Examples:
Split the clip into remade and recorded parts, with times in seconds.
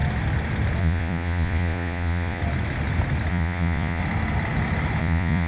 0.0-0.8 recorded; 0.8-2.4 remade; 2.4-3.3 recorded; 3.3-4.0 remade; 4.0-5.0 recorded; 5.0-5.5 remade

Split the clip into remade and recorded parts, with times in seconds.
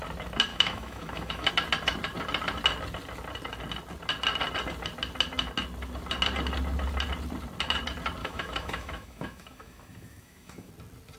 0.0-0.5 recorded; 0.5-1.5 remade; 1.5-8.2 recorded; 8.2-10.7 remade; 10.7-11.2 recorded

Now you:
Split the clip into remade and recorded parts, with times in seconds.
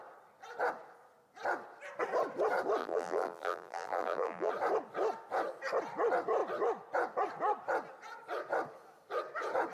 0.0-2.8 recorded; 2.8-4.5 remade; 4.5-9.7 recorded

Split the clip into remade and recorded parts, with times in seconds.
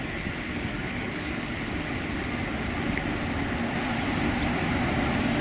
0.0-0.7 recorded; 0.7-1.6 remade; 1.6-5.4 recorded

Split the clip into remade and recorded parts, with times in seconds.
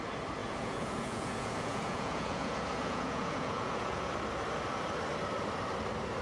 0.0-0.4 recorded; 0.4-4.1 remade; 4.1-6.2 recorded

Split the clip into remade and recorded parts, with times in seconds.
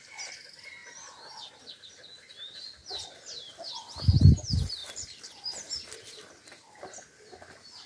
0.0-7.9 recorded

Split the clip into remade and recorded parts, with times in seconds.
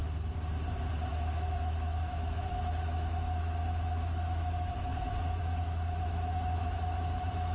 0.0-1.1 recorded; 1.1-7.5 remade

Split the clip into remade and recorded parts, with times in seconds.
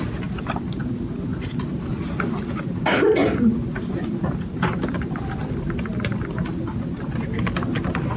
0.0-1.3 recorded; 1.3-1.9 remade; 1.9-8.2 recorded